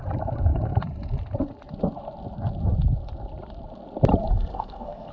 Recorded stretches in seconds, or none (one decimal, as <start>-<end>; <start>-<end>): 0.0-4.5